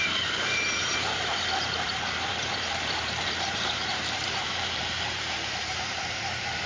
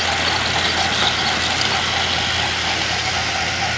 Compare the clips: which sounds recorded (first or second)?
second